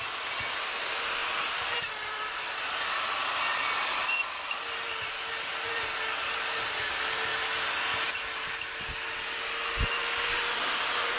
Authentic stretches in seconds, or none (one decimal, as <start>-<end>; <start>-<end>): 7.3-9.9